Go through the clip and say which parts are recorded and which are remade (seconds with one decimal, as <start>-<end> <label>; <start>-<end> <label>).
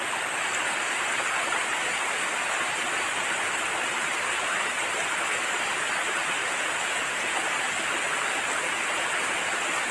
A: 0.0-6.4 recorded; 6.4-7.7 remade; 7.7-9.9 recorded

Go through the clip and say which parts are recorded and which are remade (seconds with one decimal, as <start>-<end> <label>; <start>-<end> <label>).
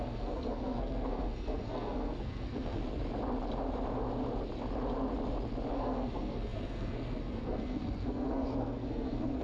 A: 0.0-2.8 remade; 2.8-5.7 recorded; 5.7-9.4 remade